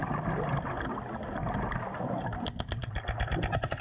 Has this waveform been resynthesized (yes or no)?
no